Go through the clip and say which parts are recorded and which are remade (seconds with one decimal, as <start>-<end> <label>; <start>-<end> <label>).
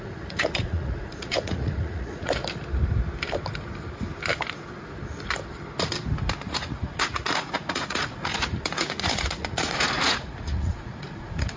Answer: 0.0-2.4 remade; 2.4-6.4 recorded; 6.4-11.6 remade